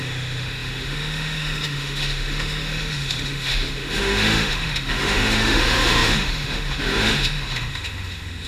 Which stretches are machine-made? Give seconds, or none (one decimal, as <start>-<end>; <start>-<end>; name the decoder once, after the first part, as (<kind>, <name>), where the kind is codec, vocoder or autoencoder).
0.0-8.5 (autoencoder, DAC-VAE)